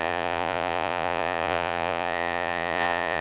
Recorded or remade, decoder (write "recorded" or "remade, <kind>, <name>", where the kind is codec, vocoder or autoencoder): remade, vocoder, Vocos